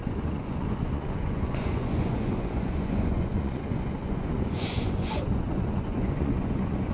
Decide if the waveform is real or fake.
fake